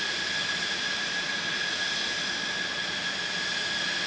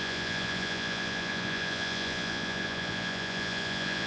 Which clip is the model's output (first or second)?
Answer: second